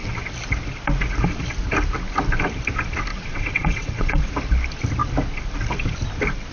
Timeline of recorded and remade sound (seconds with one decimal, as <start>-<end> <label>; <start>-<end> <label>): 0.0-3.1 recorded; 3.1-4.2 remade; 4.2-6.5 recorded